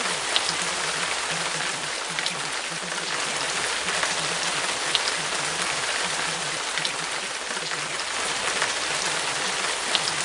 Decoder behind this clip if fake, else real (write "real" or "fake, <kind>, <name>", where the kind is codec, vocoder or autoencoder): real